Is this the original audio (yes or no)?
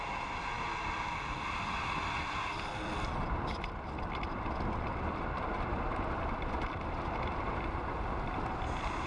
yes